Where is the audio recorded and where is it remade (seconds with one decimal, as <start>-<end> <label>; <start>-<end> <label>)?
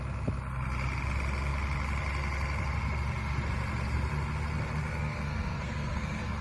0.0-4.9 recorded; 4.9-6.4 remade